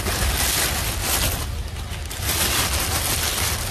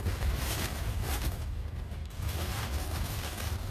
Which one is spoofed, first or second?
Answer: second